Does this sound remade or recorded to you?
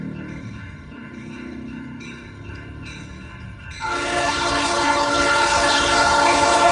remade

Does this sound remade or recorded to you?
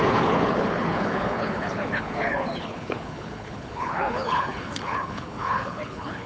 remade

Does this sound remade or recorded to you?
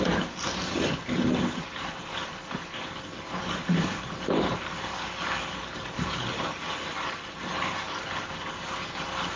recorded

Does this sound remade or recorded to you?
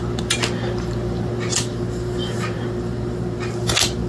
recorded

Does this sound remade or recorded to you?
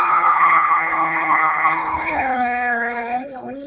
remade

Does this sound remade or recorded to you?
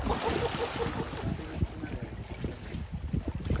recorded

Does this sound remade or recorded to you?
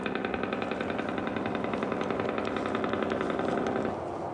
recorded